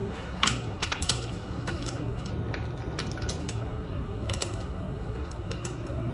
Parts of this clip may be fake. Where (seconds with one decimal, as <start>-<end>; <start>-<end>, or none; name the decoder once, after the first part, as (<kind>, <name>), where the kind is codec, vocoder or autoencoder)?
0.0-2.3 (codec, SNAC); 3.4-6.1